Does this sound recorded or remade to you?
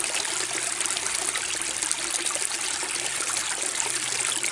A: recorded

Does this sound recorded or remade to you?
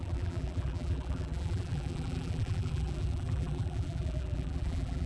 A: remade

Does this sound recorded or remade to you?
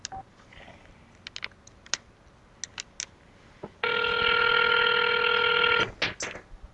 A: recorded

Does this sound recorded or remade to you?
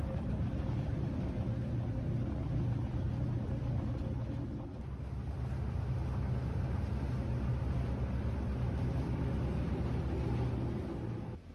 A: recorded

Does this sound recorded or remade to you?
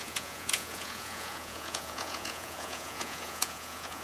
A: remade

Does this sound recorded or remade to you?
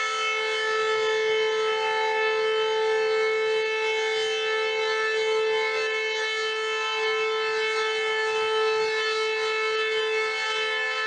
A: recorded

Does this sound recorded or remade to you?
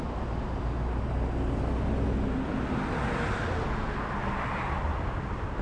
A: recorded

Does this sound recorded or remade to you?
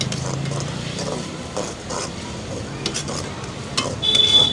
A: recorded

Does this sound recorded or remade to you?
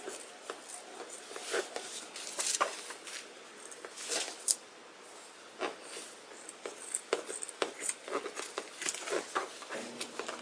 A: recorded